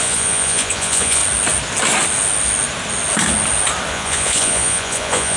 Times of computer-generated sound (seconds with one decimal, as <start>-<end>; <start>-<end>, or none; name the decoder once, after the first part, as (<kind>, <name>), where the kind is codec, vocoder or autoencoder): 0.0-1.2 (vocoder, Vocos); 3.9-5.4